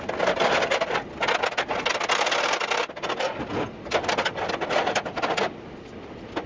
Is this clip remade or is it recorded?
recorded